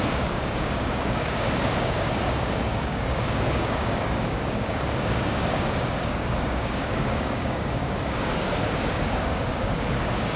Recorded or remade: remade